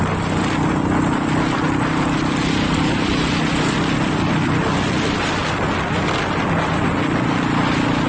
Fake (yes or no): no